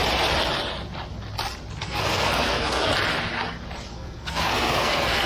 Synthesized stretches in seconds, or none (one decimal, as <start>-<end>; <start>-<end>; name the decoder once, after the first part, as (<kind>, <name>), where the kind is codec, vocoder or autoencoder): 1.8-2.9 (codec, SNAC); 3.9-5.3